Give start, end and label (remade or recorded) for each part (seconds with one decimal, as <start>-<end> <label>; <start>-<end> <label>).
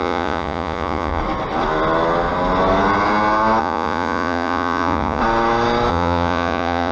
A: 0.0-1.2 remade; 1.2-3.6 recorded; 3.6-5.2 remade; 5.2-5.9 recorded; 5.9-6.9 remade